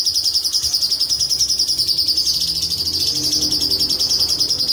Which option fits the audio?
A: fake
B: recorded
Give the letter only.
B